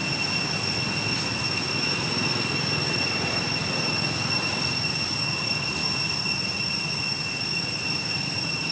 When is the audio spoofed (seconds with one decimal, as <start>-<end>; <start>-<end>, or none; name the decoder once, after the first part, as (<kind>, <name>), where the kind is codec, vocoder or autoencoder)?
none